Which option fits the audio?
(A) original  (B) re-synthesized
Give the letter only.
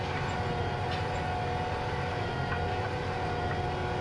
A